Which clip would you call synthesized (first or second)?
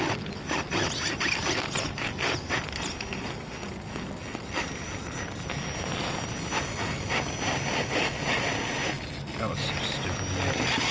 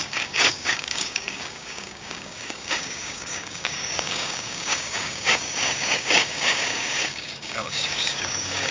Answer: second